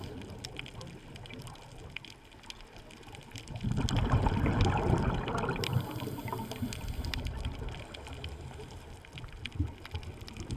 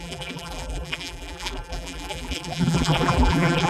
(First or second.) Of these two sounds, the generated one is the second